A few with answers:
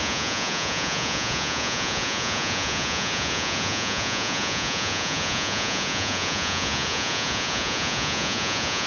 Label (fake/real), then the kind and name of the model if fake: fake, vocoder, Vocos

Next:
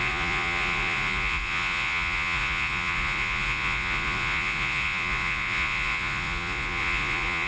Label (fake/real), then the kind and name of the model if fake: fake, vocoder, Vocos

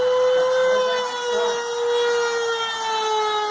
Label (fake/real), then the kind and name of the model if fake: real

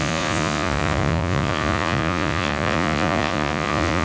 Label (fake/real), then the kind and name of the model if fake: fake, vocoder, Vocos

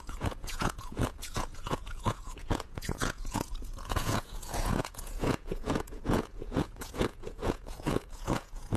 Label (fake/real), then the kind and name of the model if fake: fake, vocoder, Vocos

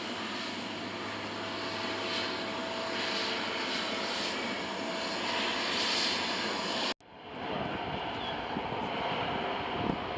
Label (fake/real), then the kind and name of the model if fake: real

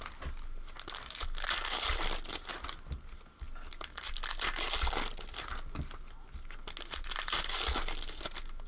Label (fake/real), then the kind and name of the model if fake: real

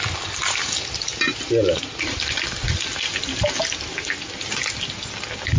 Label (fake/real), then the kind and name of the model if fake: real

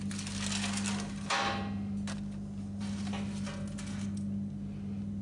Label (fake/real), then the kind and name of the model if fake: real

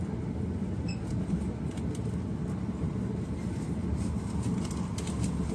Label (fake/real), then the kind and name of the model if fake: real